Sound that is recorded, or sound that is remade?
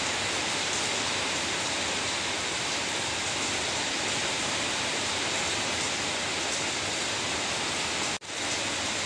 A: recorded